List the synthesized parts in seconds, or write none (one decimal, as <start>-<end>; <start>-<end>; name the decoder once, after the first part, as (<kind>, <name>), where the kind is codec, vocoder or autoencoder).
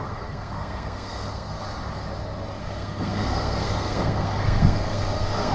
0.0-1.6 (codec, SNAC); 2.6-5.5